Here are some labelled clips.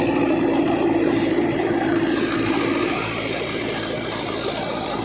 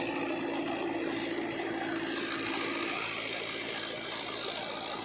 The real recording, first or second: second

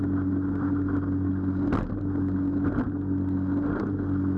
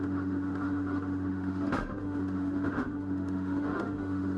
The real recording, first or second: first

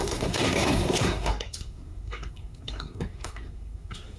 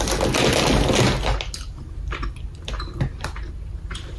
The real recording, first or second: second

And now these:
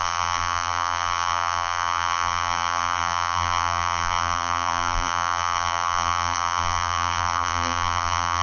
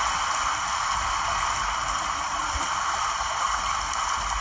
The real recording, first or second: second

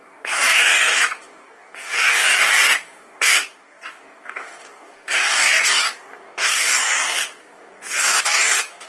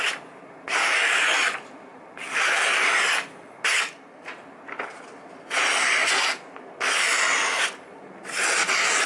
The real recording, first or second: second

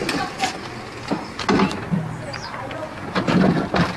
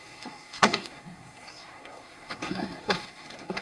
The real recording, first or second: first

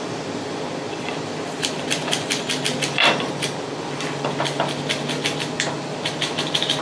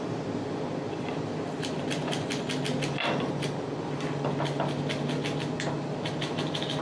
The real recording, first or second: second